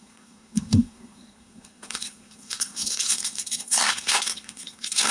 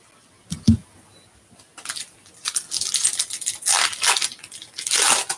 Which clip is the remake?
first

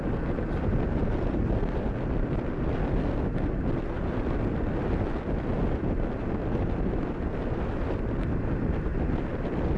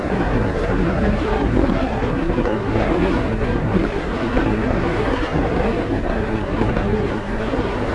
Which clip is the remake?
second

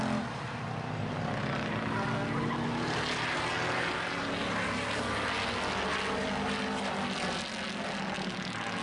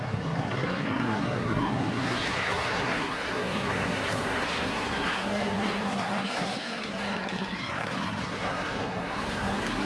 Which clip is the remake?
second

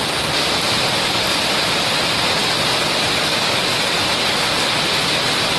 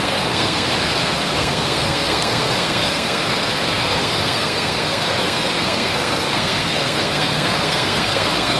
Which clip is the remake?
second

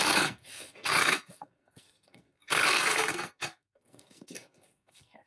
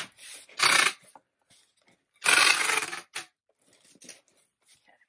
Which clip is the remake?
first